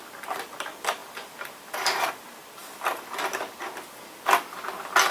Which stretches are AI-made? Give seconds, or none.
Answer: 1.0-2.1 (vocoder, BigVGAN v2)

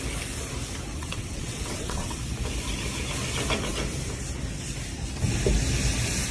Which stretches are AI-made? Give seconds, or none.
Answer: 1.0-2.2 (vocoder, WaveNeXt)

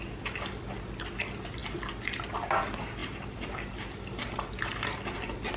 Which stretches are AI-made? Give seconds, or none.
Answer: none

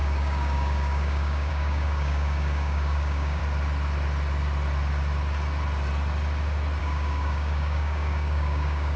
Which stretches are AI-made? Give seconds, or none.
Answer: 0.0-3.4 (codec, DAC); 6.8-9.0